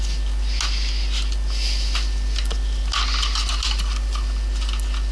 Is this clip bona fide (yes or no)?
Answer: yes